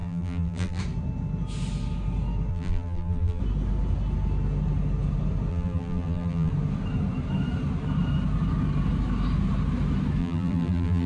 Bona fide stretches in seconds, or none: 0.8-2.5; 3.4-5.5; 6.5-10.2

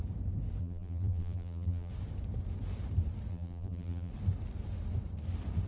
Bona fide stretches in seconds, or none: 0.0-0.6; 1.9-3.3; 4.1-5.7

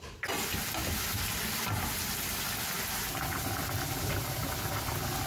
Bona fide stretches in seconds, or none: 0.0-5.3

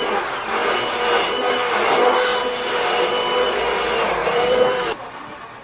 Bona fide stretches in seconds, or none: 0.0-4.2; 5.1-5.6

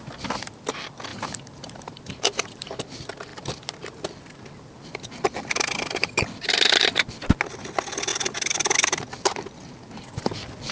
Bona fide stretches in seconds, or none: 0.0-1.1; 2.8-10.7